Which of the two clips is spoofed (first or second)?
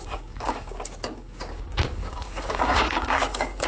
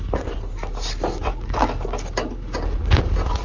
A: first